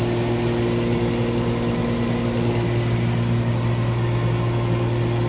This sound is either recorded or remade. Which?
recorded